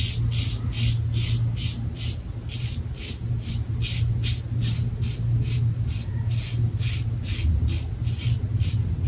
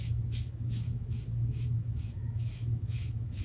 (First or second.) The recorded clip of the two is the first